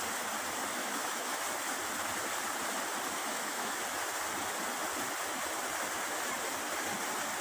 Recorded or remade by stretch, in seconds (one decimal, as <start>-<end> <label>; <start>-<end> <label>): 0.0-0.8 recorded; 0.8-1.4 remade; 1.4-3.2 recorded; 3.2-3.8 remade; 3.8-7.4 recorded